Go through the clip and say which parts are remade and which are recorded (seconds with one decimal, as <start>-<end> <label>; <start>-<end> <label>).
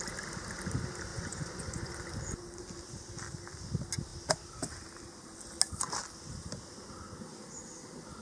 0.0-1.1 recorded; 1.1-2.2 remade; 2.2-8.2 recorded